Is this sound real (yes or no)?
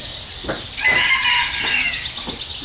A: yes